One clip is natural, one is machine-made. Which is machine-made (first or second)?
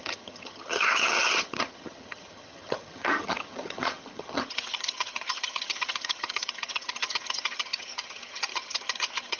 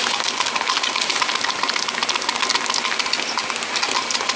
first